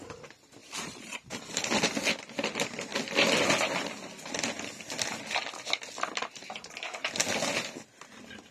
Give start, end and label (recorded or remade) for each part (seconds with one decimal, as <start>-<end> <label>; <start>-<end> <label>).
0.0-0.6 recorded; 0.6-1.3 remade; 1.3-8.5 recorded